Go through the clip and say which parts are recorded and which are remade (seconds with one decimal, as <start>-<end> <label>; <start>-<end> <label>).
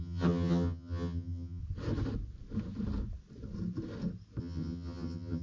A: 0.0-1.6 remade; 1.6-4.4 recorded; 4.4-5.4 remade